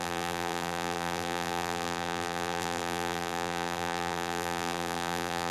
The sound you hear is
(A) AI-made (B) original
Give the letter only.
A